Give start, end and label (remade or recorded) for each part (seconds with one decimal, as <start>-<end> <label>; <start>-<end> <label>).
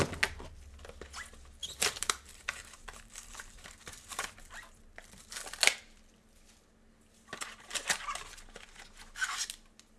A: 0.0-1.6 recorded; 1.6-4.5 remade; 4.5-10.0 recorded